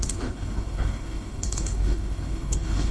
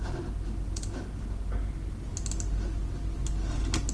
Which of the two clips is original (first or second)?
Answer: second